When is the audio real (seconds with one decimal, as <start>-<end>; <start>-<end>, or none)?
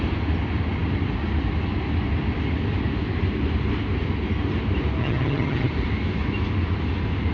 0.0-5.0; 5.7-7.3